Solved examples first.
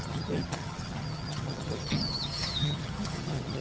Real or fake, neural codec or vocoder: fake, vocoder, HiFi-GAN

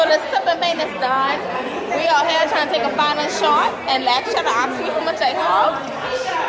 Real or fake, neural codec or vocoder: real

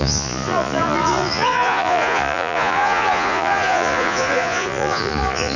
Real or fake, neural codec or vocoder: fake, vocoder, Vocos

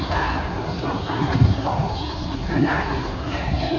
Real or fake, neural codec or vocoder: fake, codec, SNAC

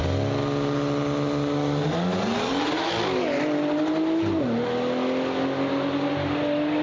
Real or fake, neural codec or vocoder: real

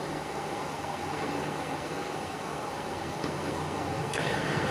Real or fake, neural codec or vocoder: fake, codec, SNAC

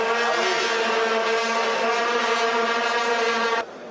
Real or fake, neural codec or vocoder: real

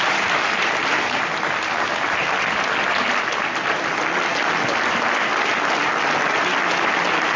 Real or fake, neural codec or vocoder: real